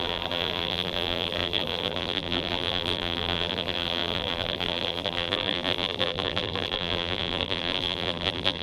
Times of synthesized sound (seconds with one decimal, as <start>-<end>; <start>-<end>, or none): 0.0-8.6